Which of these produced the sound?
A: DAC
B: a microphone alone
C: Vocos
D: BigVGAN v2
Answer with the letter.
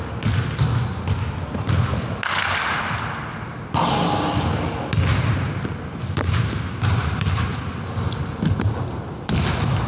B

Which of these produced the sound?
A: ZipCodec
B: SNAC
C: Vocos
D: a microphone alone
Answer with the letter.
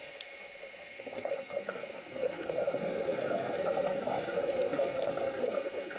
B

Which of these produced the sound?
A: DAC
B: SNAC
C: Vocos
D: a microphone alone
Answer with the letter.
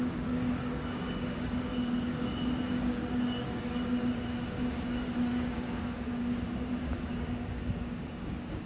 A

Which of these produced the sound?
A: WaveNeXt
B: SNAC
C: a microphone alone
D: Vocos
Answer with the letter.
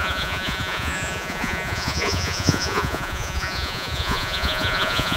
D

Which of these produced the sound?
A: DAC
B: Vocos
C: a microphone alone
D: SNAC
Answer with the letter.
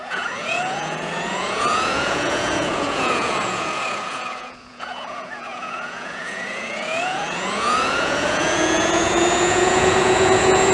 B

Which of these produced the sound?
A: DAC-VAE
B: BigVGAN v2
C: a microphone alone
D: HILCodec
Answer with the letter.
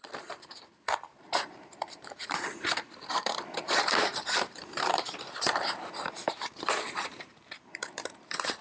B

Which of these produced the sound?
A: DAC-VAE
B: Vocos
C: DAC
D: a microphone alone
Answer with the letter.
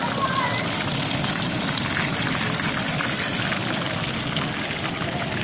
D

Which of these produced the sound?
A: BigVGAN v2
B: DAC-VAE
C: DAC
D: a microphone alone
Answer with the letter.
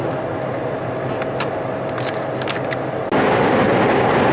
D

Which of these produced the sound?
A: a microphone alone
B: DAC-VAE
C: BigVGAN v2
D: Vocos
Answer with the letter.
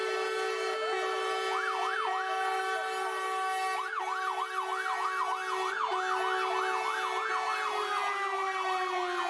A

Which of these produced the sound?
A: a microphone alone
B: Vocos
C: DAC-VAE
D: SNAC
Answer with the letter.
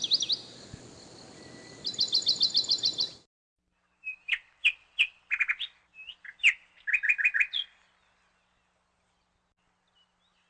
A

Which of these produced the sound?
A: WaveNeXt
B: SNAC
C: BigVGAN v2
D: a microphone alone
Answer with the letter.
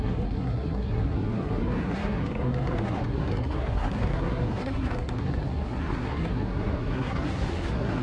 B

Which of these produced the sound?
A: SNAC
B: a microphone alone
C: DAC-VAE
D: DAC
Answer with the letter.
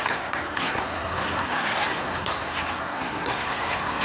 A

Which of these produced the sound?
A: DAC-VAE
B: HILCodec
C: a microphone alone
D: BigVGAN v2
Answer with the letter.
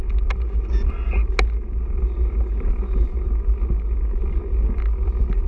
C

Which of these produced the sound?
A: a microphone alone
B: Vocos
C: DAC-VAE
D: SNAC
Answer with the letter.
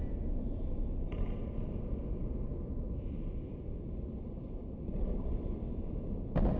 A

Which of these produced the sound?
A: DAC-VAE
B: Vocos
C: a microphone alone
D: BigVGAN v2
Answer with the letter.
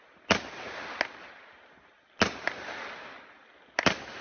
C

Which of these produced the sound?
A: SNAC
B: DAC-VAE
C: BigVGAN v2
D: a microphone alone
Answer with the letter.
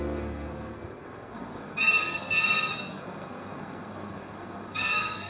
A